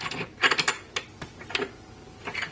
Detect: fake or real real